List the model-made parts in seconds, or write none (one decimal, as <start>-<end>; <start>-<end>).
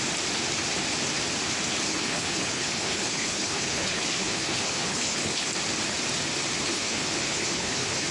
1.9-5.5; 6.7-8.1